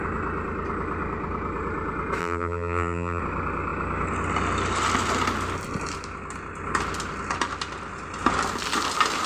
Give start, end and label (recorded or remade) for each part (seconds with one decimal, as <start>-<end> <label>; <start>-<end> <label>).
0.0-2.2 recorded; 2.2-3.2 remade; 3.2-9.3 recorded